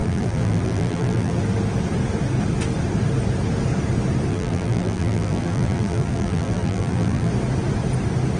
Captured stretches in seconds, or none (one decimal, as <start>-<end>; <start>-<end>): 1.4-4.3; 7.3-8.4